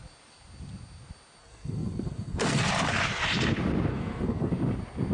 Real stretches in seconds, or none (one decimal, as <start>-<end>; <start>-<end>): 0.0-1.4; 2.7-3.9; 4.5-5.1